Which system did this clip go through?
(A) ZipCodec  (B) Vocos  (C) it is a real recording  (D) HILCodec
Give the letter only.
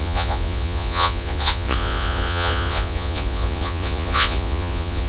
B